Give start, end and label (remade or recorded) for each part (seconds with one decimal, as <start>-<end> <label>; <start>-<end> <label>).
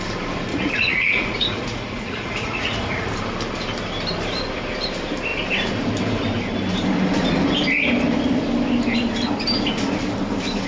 0.0-0.5 recorded; 0.5-3.1 remade; 3.1-10.7 recorded